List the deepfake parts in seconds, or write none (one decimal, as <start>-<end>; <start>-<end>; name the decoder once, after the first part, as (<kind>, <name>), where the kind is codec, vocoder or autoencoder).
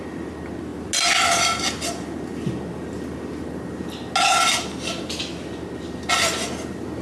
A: none